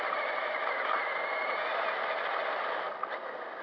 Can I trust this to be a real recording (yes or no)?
yes